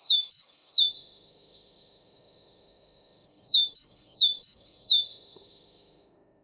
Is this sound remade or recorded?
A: remade